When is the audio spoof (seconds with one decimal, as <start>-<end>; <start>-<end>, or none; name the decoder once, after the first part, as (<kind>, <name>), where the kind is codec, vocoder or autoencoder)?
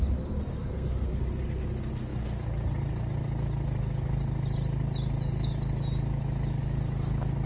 0.5-1.2 (codec, SNAC)